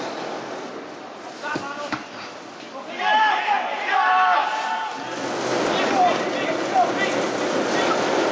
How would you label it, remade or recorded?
recorded